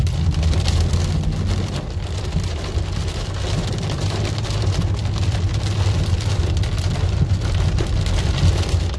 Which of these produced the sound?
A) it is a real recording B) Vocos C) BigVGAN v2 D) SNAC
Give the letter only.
C